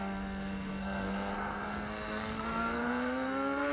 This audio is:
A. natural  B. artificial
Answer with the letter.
B